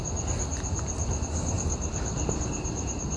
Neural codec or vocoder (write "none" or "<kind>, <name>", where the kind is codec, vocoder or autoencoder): none